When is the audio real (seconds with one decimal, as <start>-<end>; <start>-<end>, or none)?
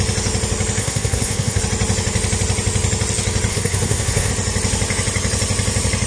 0.0-0.8; 1.6-3.5; 4.3-6.1